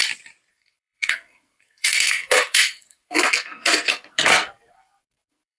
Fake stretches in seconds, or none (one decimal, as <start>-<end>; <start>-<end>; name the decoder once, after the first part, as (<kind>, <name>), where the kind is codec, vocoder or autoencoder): 0.5-5.6 (codec, SNAC)